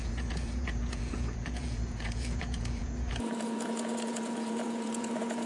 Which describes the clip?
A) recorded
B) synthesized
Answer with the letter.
B